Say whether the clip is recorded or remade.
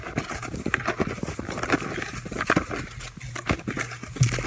recorded